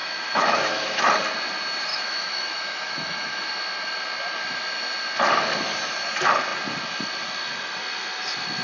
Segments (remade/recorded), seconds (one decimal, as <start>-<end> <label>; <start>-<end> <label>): 0.0-1.1 remade; 1.1-1.9 recorded; 1.9-3.5 remade; 3.5-8.6 recorded